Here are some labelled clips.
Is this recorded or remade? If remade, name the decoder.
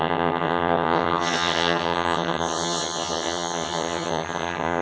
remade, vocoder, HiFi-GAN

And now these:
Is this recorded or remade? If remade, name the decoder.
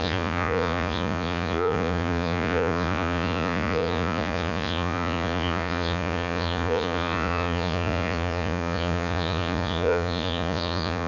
remade, vocoder, Vocos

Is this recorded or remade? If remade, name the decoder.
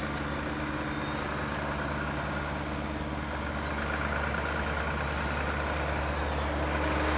recorded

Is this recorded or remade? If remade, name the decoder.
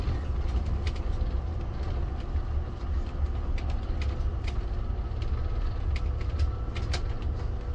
recorded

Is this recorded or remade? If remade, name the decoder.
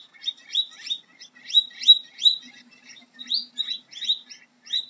recorded